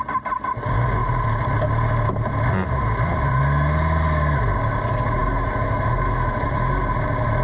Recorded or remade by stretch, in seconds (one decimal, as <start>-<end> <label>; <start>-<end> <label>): 0.0-5.2 recorded; 5.2-6.7 remade; 6.7-7.4 recorded